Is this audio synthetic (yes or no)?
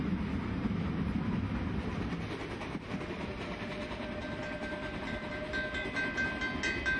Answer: no